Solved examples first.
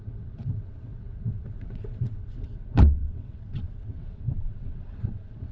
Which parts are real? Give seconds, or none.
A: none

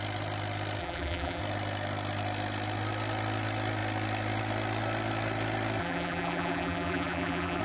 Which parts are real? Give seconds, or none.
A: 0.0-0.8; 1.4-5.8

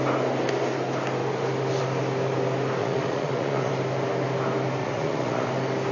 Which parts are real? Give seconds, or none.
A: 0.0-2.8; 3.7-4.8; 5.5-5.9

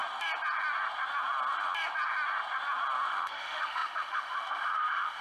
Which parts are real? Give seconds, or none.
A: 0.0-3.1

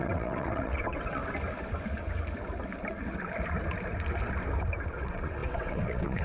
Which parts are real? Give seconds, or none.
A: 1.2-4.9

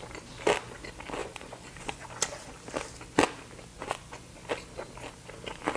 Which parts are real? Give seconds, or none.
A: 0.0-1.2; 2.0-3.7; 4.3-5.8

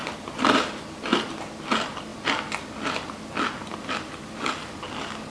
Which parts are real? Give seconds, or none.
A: 0.7-5.3